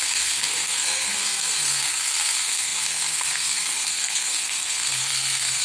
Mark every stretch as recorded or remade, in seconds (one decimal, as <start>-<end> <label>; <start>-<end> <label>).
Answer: 0.0-5.6 remade